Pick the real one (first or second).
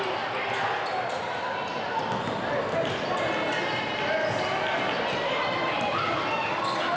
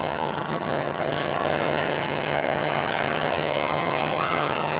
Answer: first